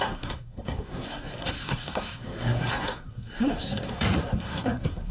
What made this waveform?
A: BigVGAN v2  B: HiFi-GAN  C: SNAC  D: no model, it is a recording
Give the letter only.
C